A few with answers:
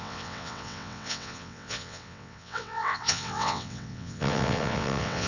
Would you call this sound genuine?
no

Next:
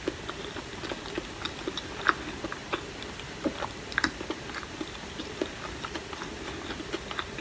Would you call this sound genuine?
yes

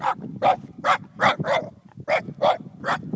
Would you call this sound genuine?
yes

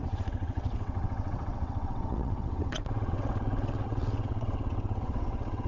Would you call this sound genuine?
no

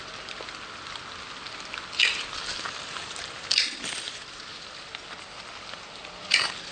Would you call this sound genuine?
yes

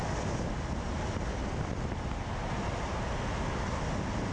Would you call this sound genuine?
yes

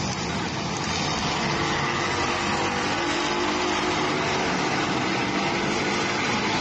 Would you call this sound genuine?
yes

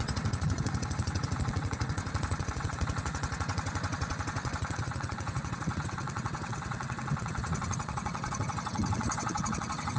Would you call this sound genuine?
no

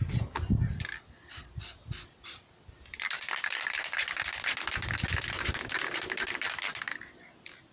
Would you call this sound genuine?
yes